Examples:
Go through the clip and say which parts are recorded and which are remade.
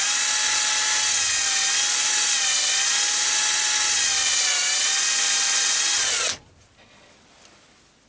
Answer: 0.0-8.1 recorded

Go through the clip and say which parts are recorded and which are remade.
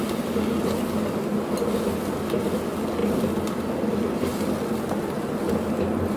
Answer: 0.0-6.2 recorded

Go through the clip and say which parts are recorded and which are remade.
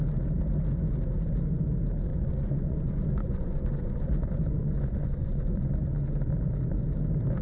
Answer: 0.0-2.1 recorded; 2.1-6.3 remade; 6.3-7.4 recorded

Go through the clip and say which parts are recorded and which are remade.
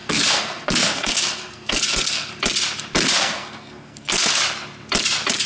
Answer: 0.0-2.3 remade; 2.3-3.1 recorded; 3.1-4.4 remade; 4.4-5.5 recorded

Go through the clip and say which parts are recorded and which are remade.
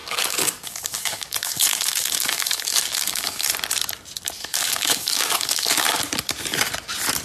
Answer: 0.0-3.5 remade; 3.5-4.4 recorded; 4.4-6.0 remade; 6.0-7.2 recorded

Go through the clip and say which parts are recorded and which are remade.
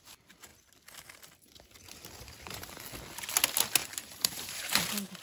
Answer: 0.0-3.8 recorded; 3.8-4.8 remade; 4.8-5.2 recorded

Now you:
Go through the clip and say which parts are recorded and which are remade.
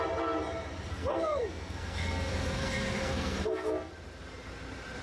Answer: 0.0-0.9 recorded; 0.9-3.9 remade; 3.9-5.0 recorded